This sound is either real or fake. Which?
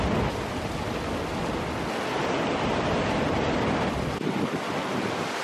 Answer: real